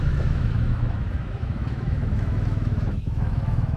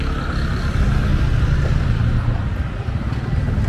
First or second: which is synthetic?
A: first